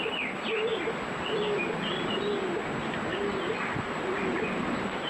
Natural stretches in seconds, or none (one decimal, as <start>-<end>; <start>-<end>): 0.0-3.1